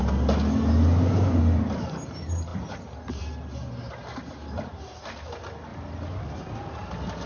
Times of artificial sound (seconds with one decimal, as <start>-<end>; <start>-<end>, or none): none